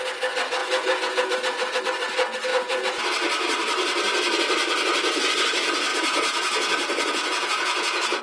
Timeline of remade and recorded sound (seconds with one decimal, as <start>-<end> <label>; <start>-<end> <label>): 0.0-0.6 recorded; 0.6-1.8 remade; 1.8-2.5 recorded; 2.5-3.0 remade; 3.0-5.9 recorded; 5.9-8.2 remade